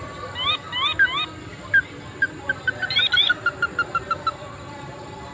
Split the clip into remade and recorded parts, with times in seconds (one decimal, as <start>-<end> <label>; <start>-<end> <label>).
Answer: 0.0-5.3 recorded